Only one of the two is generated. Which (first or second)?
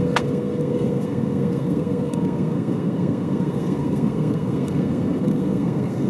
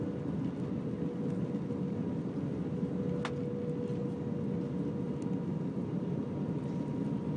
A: first